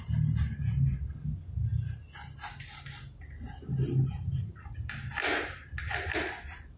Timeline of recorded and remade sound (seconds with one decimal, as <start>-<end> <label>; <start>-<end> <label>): 0.0-6.8 recorded